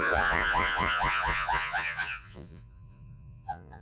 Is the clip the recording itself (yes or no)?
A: no